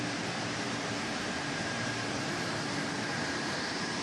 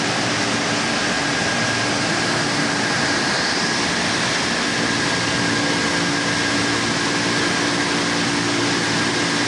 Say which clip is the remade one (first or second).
first